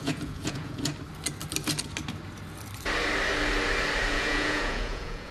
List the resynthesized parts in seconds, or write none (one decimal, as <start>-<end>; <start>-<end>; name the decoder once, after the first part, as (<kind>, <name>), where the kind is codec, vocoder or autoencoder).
0.0-0.9 (vocoder, Vocos); 4.1-5.3